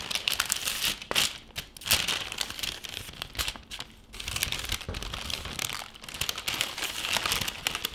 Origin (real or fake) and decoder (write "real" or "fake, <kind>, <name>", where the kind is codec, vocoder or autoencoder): real